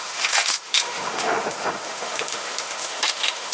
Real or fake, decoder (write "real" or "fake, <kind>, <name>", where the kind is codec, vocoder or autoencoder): fake, autoencoder, DAC-VAE